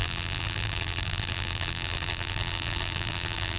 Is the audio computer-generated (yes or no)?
yes